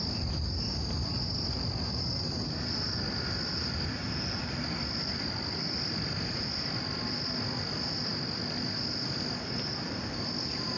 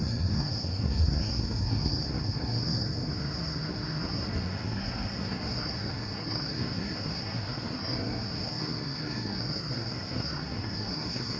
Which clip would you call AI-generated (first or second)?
second